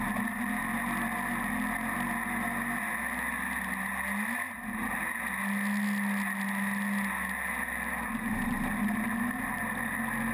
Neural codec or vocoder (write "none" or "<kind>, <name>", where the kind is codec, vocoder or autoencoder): none